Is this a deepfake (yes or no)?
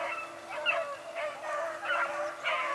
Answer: no